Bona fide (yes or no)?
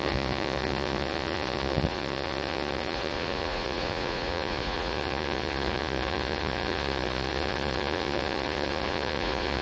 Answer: no